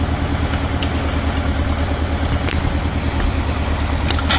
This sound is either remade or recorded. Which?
recorded